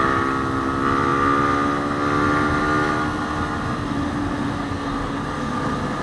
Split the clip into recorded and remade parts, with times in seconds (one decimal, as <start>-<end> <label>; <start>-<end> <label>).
0.0-6.0 recorded